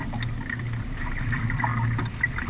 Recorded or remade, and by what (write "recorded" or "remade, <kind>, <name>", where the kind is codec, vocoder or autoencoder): recorded